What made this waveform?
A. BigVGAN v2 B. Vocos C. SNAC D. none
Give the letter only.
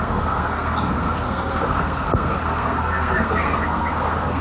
C